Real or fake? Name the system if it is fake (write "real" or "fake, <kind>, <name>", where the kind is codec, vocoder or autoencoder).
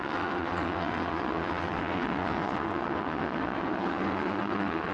fake, vocoder, WaveNeXt